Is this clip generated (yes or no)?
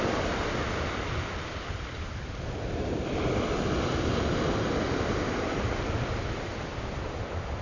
no